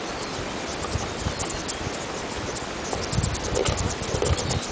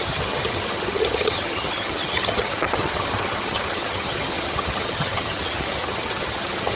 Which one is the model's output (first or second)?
second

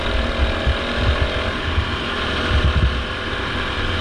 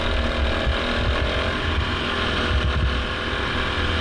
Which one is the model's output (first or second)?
first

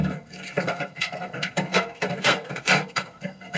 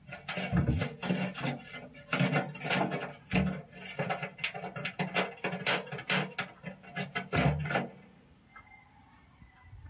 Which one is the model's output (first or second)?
first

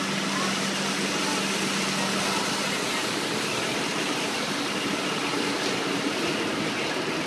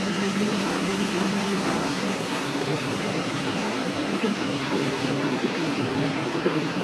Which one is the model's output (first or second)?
second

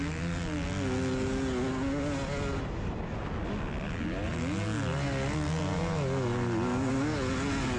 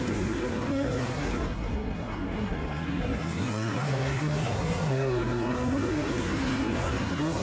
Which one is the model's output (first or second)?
second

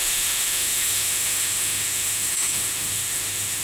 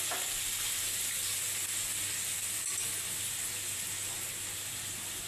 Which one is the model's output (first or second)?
first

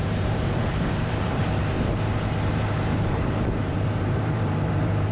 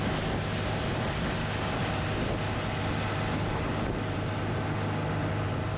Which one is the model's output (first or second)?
first